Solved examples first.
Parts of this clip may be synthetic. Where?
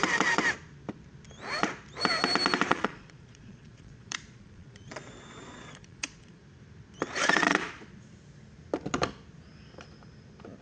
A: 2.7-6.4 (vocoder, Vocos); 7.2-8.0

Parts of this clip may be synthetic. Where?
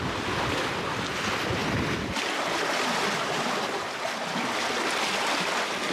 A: none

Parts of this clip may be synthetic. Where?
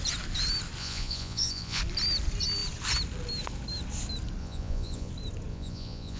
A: 0.8-1.8 (vocoder, Vocos); 4.4-5.1; 5.5-6.2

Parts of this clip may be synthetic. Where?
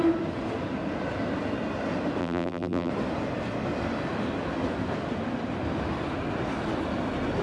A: 2.2-2.9 (vocoder, BigVGAN v2)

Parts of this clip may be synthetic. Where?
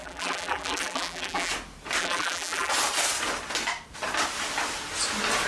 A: 0.0-1.5 (vocoder, BigVGAN v2); 2.0-2.7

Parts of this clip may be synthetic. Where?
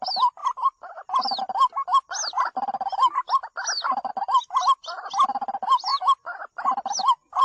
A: 0.4-1.4 (vocoder, BigVGAN v2)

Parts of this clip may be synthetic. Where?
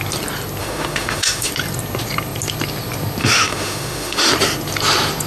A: 0.6-1.5 (autoencoder, DAC-VAE); 3.2-4.3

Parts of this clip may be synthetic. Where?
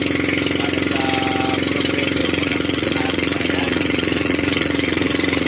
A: 2.2-5.5 (vocoder, Vocos)